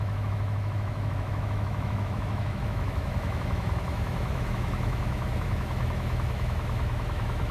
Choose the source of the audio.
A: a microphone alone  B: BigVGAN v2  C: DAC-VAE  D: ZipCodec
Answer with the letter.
C